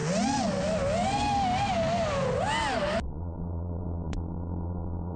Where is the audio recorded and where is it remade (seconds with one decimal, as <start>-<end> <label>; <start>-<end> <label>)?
0.0-3.1 recorded; 3.1-5.2 remade